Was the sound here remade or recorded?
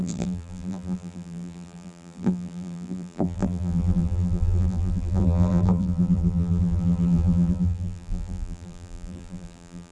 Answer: remade